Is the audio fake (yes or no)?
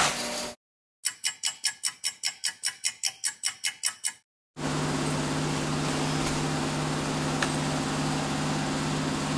no